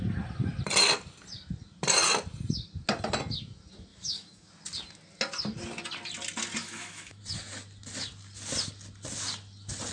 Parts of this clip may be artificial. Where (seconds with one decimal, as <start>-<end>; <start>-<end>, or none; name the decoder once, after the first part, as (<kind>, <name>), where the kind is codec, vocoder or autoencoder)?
3.9-4.5 (autoencoder, DAC-VAE); 6.6-7.2